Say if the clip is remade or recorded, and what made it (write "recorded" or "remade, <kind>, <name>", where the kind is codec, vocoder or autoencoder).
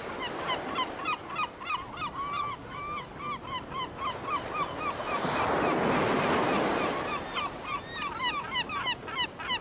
recorded